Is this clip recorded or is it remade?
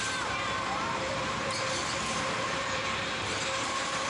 remade